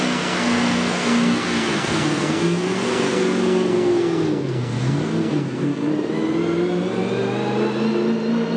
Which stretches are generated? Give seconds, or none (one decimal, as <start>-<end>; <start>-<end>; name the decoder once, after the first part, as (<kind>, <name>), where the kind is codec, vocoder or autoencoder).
0.0-5.9 (codec, SNAC)